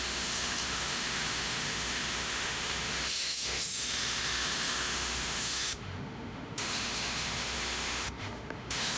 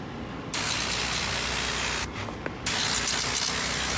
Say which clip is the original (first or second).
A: second